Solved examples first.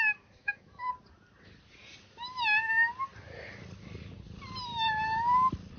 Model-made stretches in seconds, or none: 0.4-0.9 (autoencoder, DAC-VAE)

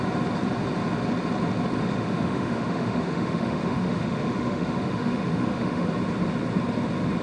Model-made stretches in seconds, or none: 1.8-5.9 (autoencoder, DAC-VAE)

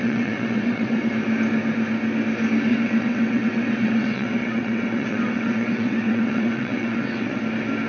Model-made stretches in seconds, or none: 0.0-1.1 (vocoder, WaveNeXt); 2.7-7.4

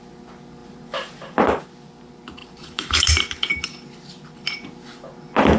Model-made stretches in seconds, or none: 0.6-1.6 (vocoder, BigVGAN v2); 2.4-3.5

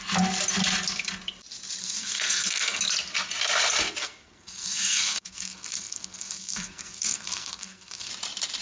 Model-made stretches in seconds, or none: 1.8-2.8 (codec, SNAC); 4.0-8.1

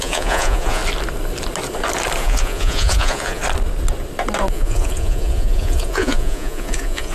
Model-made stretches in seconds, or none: 0.0-0.8 (vocoder, Vocos); 2.2-3.4; 4.5-7.1

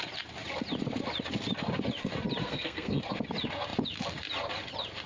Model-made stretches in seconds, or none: 2.4-3.0 (codec, SNAC)